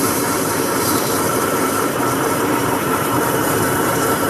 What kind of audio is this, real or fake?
fake